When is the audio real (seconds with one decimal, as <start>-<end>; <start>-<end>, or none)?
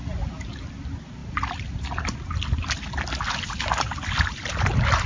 0.0-5.1